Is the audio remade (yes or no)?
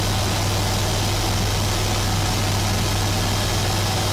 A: no